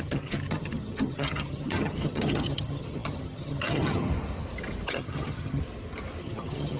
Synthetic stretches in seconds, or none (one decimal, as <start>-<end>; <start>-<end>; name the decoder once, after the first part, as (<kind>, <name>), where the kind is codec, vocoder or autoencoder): 0.0-4.1 (vocoder, HiFi-GAN); 4.9-5.6; 6.2-6.8